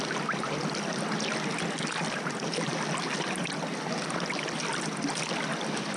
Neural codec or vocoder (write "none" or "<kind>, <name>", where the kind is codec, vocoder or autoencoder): none